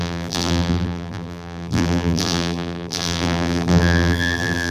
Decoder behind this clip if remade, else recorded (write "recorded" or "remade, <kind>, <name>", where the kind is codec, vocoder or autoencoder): remade, vocoder, BigVGAN v2